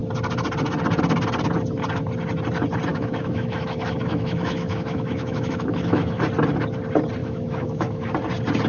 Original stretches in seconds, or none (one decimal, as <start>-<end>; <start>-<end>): 0.0-2.9; 6.2-7.2; 8.1-8.7